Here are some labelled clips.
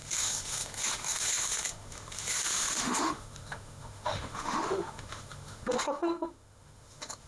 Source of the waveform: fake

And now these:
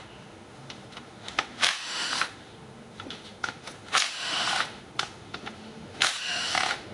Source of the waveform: fake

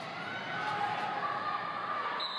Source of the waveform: real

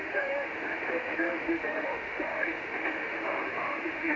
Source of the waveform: fake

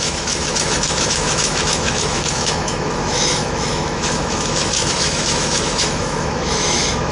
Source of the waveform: fake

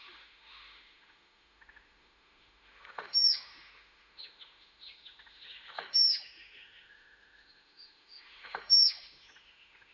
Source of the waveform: fake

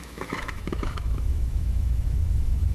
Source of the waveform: fake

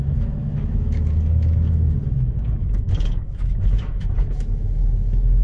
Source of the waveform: fake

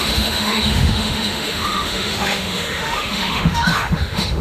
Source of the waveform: fake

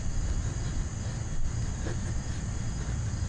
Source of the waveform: real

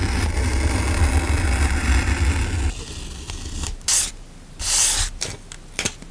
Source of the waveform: real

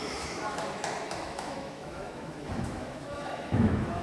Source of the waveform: fake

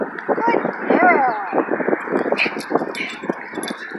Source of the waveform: real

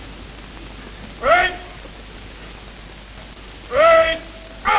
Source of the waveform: real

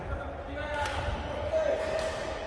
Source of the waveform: real